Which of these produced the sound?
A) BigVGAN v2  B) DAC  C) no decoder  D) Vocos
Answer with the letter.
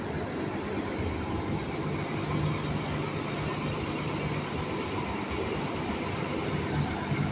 C